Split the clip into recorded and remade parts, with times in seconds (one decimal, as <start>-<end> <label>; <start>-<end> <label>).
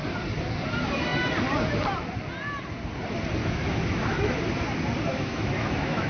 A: 0.0-3.4 recorded; 3.4-4.4 remade; 4.4-5.1 recorded; 5.1-6.1 remade